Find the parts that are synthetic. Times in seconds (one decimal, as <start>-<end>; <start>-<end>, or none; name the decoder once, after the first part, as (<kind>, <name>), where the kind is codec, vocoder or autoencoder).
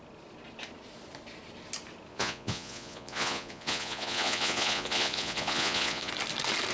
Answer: 2.1-6.1 (vocoder, Vocos)